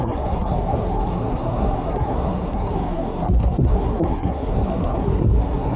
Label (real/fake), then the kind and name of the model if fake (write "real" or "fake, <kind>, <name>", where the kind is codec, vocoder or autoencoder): fake, codec, SNAC